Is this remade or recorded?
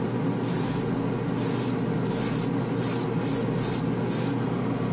recorded